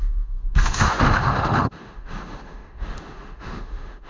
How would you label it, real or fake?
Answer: fake